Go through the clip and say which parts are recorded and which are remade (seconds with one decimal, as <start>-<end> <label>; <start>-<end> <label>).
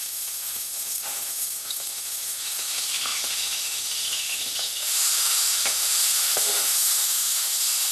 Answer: 0.0-7.9 remade